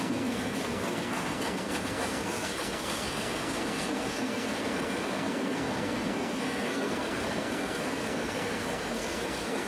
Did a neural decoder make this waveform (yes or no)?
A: yes